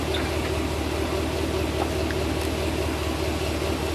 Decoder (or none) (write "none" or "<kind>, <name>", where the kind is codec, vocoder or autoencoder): none